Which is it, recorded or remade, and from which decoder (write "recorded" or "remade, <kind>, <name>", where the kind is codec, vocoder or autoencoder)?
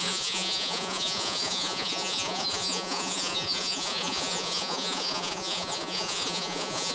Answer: remade, vocoder, Vocos